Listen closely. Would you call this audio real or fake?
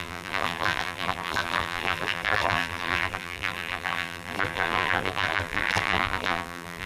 fake